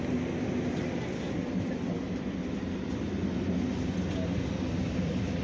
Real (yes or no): yes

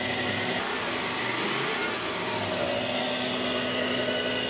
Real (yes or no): yes